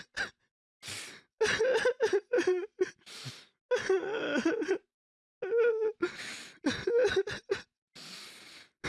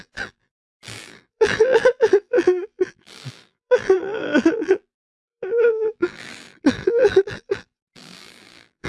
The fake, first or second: second